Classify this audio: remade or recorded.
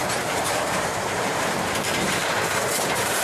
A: remade